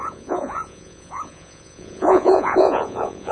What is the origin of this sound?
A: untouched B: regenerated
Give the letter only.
B